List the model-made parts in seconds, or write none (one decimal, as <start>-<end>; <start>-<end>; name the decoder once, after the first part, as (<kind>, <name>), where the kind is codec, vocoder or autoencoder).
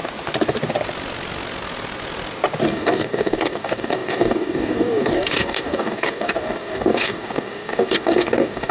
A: 2.7-8.7 (codec, DAC)